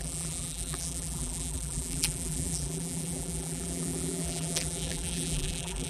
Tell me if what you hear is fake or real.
fake